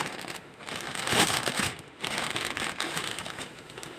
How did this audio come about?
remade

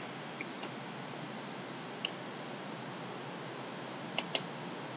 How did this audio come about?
recorded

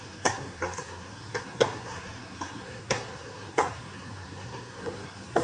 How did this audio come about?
remade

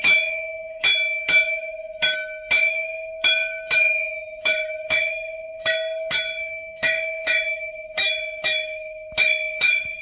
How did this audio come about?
remade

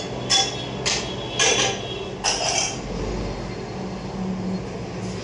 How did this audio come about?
recorded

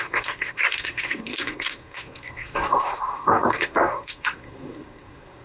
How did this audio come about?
remade